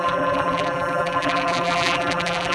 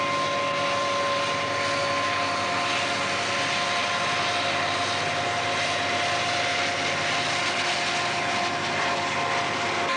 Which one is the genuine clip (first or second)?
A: second